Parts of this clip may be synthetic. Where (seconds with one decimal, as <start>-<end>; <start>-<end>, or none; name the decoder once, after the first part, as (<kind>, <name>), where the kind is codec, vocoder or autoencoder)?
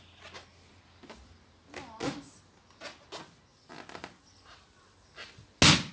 3.5-5.3 (vocoder, BigVGAN v2)